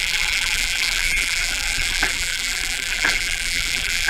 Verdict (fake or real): fake